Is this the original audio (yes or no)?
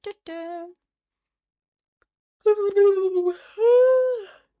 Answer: yes